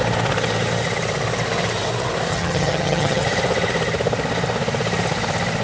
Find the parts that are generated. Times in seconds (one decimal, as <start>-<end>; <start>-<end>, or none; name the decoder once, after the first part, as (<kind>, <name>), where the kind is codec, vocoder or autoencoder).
2.3-3.2 (vocoder, HiFi-GAN)